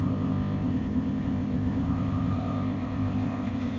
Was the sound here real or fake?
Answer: fake